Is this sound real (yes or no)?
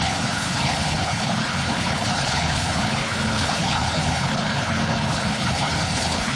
no